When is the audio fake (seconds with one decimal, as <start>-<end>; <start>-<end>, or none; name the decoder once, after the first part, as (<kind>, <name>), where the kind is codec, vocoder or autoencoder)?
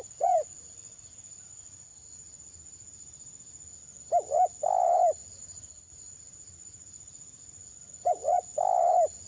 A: 0.0-1.9 (vocoder, Vocos); 5.4-8.5